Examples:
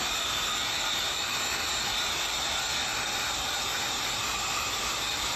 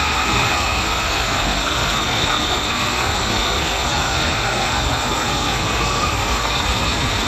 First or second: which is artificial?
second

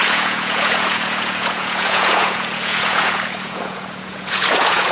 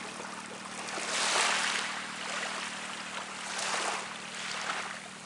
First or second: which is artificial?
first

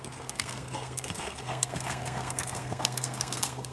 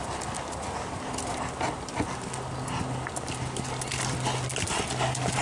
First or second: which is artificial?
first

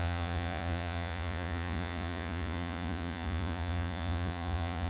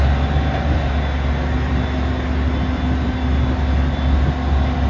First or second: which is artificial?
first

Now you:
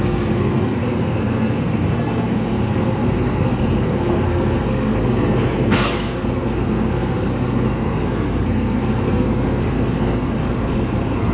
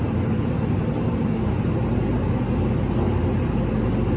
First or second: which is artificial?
first